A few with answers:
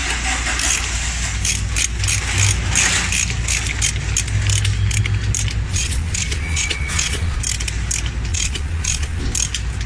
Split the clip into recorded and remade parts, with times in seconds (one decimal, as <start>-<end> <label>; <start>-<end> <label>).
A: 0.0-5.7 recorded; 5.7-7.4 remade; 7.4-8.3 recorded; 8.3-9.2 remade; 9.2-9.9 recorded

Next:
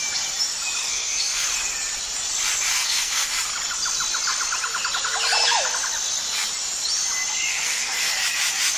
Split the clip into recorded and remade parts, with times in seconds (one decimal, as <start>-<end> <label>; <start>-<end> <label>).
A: 0.0-0.8 recorded; 0.8-1.5 remade; 1.5-2.7 recorded; 2.7-3.3 remade; 3.3-7.5 recorded; 7.5-8.1 remade; 8.1-8.8 recorded

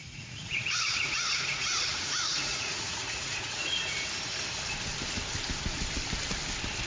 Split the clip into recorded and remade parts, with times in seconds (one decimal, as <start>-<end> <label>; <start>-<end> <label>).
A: 0.0-4.1 remade; 4.1-6.9 recorded

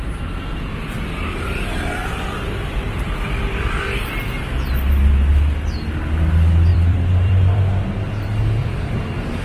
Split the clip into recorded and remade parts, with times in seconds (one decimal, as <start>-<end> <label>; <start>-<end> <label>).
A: 0.0-2.0 recorded; 2.0-4.2 remade; 4.2-6.7 recorded; 6.7-7.6 remade; 7.6-8.6 recorded; 8.6-9.4 remade

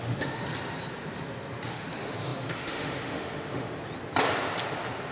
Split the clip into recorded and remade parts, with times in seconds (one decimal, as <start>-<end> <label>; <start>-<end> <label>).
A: 0.0-0.4 remade; 0.4-1.7 recorded; 1.7-3.7 remade; 3.7-5.1 recorded

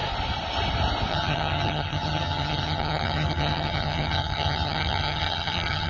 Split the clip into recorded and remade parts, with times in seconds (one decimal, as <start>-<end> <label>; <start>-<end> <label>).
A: 0.0-1.1 recorded; 1.1-5.9 remade

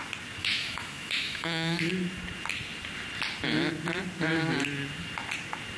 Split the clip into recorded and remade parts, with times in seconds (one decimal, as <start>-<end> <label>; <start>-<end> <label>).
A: 0.0-0.4 recorded; 0.4-1.9 remade; 1.9-5.8 recorded

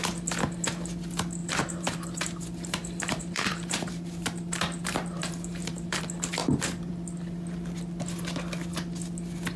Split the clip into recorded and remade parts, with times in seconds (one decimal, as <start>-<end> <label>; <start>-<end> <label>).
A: 0.0-1.4 recorded; 1.4-6.0 remade; 6.0-9.6 recorded